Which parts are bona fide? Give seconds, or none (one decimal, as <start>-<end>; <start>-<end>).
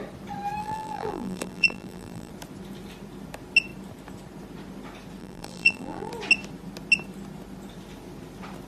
0.0-0.6; 2.3-5.2; 6.1-8.7